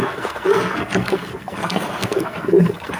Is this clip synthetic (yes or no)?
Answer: yes